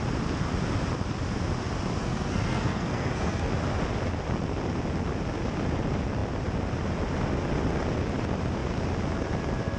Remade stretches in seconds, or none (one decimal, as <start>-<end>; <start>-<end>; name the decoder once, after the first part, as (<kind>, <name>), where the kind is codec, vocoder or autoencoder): 2.0-3.5 (codec, SNAC)